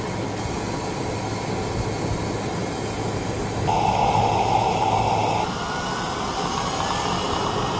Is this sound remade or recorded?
recorded